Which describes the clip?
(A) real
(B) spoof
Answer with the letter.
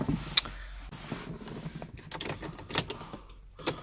A